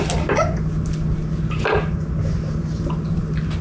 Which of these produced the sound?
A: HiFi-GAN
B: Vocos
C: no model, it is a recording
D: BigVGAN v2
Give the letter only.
C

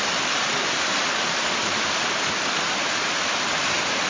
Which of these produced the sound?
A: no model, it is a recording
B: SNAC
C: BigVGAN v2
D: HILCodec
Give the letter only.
C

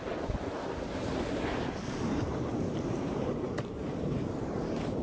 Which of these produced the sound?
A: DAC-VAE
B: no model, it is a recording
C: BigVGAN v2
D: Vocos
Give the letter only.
C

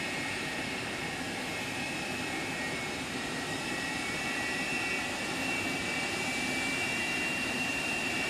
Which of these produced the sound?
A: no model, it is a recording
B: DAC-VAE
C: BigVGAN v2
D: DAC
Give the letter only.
C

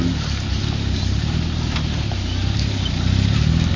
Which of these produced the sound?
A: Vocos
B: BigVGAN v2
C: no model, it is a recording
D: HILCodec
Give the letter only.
C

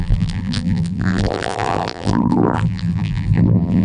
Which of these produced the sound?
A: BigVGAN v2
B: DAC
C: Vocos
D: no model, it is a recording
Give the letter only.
A